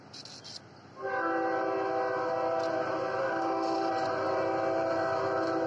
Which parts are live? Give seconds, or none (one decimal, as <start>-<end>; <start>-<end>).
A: 0.0-3.2; 3.9-5.7